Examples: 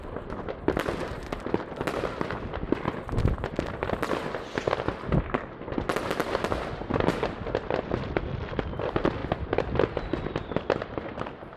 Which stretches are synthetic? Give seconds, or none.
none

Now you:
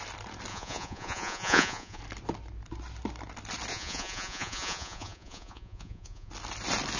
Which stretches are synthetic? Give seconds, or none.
0.5-2.0; 3.7-6.3

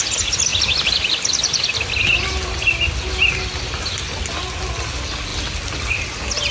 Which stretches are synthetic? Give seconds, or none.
none

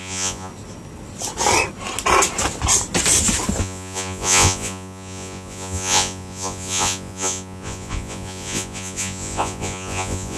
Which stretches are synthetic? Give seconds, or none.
0.0-0.5; 3.6-10.4